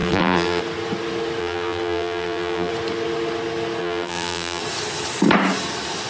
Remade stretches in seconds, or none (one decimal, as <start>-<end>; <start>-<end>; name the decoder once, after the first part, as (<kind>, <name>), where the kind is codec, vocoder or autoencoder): 0.0-0.6 (vocoder, BigVGAN v2); 1.4-2.7; 3.8-4.6